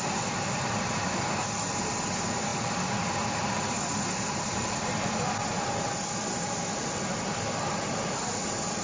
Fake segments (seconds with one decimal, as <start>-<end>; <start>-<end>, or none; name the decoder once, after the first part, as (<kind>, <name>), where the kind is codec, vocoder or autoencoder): none